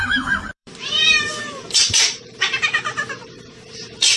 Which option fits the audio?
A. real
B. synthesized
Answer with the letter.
B